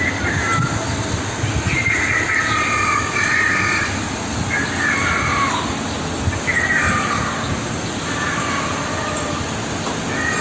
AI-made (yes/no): no